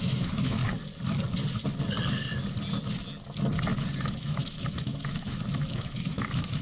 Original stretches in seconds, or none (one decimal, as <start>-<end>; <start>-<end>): 0.6-4.0

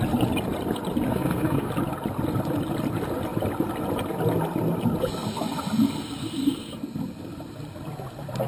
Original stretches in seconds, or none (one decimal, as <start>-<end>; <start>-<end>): 0.0-1.1; 1.7-8.5

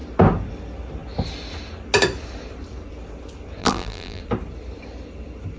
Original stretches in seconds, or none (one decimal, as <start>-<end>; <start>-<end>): 0.0-3.6; 4.2-5.6

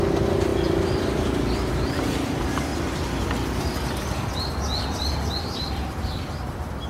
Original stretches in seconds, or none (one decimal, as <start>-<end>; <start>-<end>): 2.7-5.4

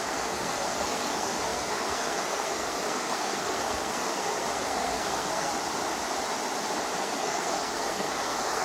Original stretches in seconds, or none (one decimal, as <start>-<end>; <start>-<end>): 5.5-7.0

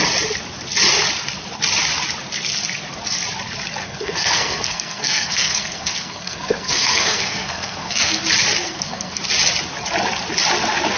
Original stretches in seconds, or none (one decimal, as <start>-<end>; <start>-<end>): 0.0-3.8; 8.2-8.6; 9.2-11.0

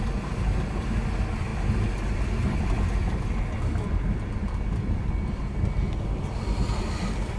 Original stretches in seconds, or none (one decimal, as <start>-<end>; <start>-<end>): 0.0-7.4

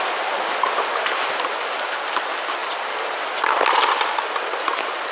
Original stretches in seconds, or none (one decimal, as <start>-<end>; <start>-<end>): 0.0-2.6